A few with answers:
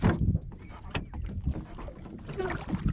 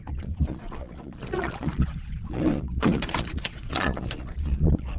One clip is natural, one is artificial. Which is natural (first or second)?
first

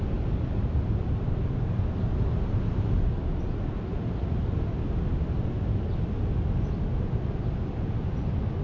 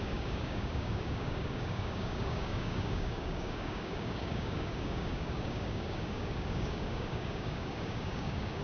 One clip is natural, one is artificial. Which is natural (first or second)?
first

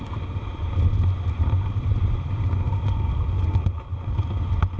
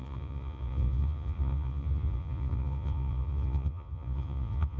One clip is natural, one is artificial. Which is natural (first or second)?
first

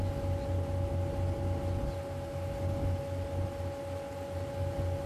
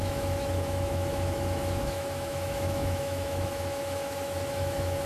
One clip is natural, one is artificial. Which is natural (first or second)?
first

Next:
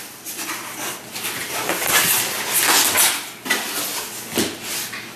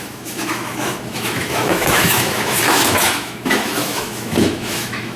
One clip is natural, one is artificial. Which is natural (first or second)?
first